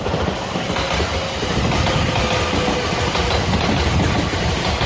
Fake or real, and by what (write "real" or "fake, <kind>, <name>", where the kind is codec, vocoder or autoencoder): real